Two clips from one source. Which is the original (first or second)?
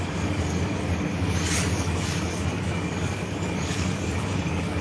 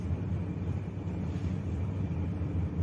second